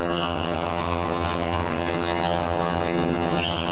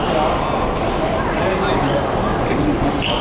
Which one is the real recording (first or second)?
second